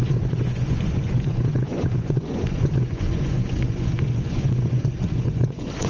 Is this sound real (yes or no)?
no